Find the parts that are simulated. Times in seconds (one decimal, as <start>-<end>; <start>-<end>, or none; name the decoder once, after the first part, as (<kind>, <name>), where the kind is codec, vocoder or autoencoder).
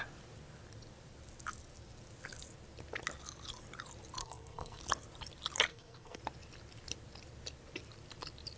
4.2-4.8 (codec, SNAC); 5.7-6.2